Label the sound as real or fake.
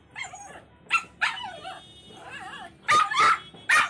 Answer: real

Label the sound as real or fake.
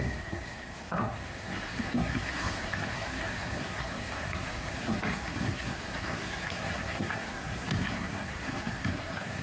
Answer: fake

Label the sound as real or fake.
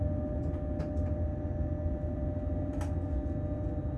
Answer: real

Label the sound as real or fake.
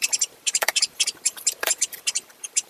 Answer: fake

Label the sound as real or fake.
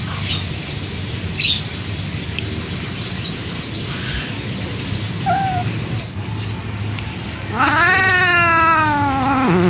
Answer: real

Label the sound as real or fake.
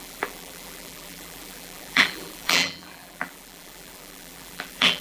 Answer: fake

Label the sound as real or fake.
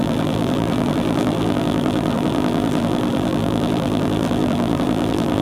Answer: fake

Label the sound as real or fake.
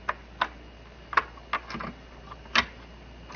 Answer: real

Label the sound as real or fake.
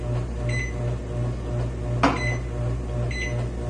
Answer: real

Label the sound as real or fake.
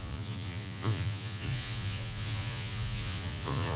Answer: fake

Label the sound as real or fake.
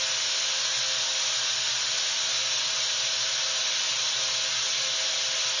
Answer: real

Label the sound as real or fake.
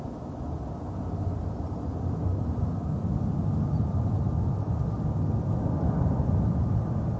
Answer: real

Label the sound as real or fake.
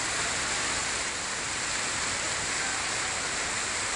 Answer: real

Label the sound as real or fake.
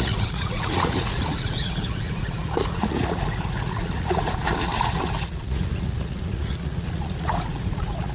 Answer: fake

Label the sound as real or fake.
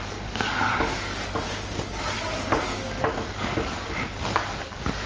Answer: fake